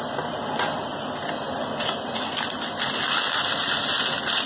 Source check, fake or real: real